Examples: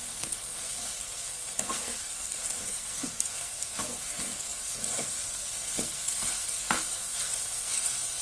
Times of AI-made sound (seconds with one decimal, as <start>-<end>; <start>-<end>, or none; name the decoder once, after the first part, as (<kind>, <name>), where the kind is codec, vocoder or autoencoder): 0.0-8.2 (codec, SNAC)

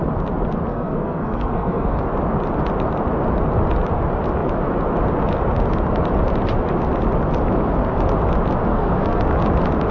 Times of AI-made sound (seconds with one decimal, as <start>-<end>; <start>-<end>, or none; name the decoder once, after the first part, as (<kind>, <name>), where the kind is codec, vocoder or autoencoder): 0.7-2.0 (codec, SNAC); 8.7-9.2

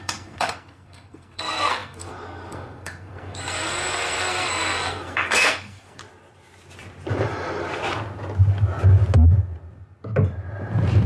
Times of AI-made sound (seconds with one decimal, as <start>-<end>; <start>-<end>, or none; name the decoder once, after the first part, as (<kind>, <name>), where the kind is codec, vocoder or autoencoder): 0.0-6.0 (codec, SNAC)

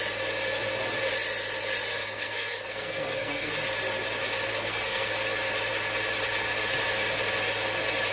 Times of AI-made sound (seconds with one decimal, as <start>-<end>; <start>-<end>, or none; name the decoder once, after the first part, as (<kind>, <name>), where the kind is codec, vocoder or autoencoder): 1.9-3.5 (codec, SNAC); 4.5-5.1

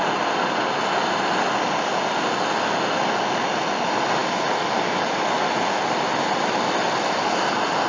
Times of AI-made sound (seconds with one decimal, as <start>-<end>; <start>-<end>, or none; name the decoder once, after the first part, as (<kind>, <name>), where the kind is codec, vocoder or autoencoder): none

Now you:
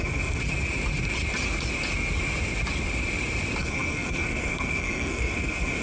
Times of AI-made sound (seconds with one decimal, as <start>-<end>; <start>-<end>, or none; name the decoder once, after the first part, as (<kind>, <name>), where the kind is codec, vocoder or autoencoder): 0.0-0.4 (codec, SNAC); 3.6-5.8